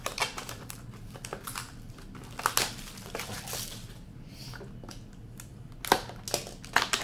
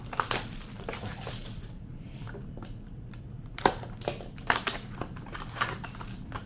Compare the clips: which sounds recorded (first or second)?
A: first